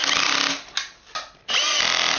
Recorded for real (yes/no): yes